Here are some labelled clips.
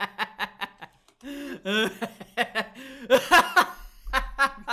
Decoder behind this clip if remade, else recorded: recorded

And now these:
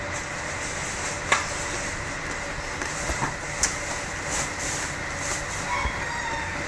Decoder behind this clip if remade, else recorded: recorded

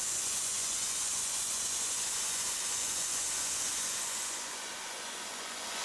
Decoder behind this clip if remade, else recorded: remade, vocoder, Vocos